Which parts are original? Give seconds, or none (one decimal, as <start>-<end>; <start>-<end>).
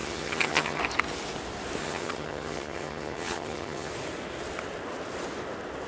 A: 0.8-1.8; 3.9-5.9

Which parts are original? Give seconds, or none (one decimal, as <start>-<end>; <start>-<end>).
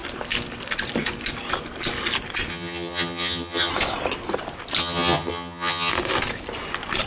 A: 0.0-2.5; 3.7-4.8; 5.9-7.1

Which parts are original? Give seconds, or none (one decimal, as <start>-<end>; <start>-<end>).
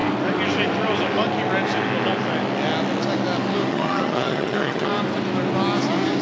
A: 0.0-3.7; 4.9-6.2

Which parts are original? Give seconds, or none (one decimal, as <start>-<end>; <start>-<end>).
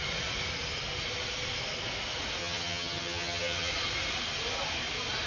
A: 0.0-2.4; 3.7-5.3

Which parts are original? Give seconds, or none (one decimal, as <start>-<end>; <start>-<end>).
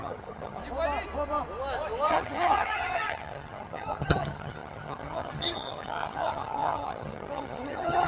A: 0.6-2.1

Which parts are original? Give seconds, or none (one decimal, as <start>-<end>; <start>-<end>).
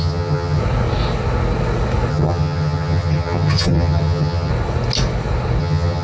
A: 0.6-2.1; 4.5-5.6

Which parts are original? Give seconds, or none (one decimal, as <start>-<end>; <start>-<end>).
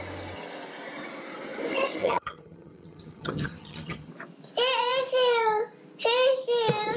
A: 0.0-2.0; 4.1-7.0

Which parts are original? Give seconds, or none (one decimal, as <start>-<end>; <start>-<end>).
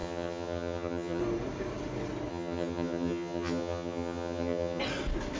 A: 1.2-2.3; 4.8-5.4